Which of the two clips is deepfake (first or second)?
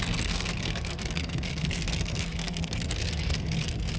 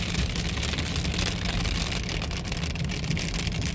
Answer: first